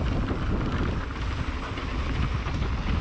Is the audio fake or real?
real